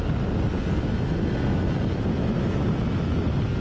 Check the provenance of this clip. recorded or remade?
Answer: recorded